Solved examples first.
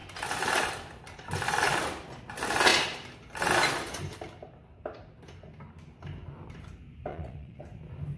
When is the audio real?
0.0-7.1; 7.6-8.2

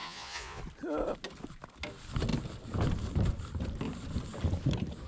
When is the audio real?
0.6-5.1

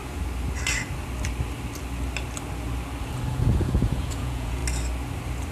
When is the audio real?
0.0-3.3; 4.6-5.5

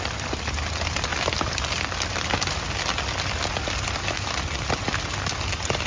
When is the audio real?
0.0-5.9

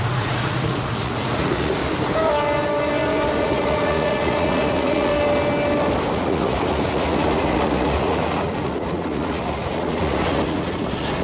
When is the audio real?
1.8-3.4; 5.1-6.1

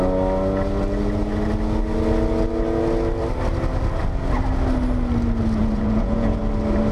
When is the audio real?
0.0-5.6; 6.4-6.9

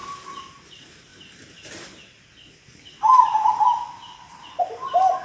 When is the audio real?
0.0-5.2

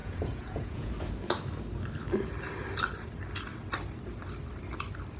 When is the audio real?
0.9-5.2